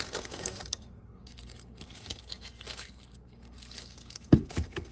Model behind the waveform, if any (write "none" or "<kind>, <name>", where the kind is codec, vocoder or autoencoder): codec, SNAC